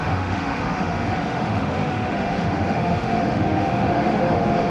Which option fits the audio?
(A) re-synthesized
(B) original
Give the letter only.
A